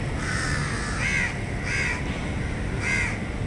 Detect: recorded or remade recorded